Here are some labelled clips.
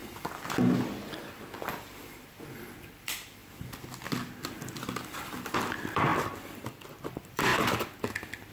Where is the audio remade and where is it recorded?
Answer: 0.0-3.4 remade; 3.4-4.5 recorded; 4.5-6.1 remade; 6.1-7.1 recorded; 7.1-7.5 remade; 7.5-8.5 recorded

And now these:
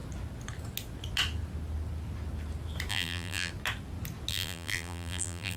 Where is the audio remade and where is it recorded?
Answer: 0.0-2.9 recorded; 2.9-3.5 remade; 3.5-4.3 recorded; 4.3-5.6 remade

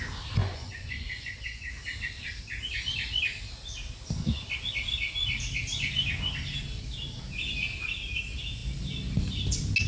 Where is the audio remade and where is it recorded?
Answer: 0.0-0.4 recorded; 0.4-1.7 remade; 1.7-9.9 recorded

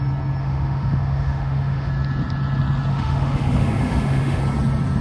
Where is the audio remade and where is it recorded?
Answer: 0.0-0.4 recorded; 0.4-1.9 remade; 1.9-2.9 recorded; 2.9-4.4 remade; 4.4-5.0 recorded

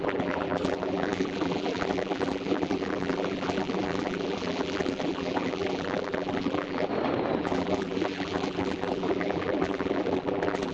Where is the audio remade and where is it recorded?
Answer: 0.0-6.9 remade; 6.9-7.4 recorded; 7.4-10.7 remade

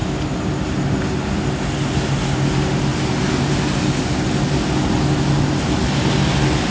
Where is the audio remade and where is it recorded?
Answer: 0.0-6.7 recorded

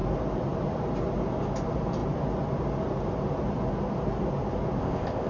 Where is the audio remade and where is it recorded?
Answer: 0.0-4.8 recorded; 4.8-5.3 remade

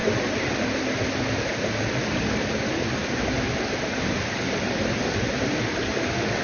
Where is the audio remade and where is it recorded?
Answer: 0.0-6.4 recorded